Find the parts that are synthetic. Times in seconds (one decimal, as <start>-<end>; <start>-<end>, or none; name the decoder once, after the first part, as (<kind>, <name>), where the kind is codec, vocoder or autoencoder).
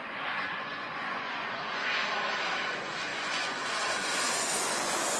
0.0-2.0 (vocoder, Vocos); 2.6-5.2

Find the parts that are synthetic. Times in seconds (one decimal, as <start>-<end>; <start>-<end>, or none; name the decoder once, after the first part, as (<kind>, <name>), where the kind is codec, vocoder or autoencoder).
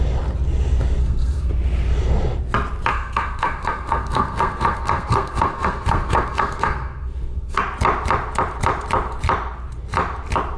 1.0-1.5 (codec, SNAC); 2.9-7.6